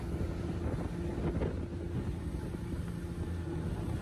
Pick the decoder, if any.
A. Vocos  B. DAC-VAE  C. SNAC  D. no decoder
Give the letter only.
D